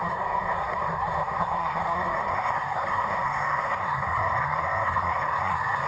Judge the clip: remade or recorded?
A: remade